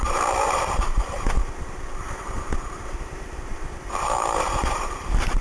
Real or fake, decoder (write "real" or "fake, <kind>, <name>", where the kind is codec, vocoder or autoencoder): fake, vocoder, BigVGAN v2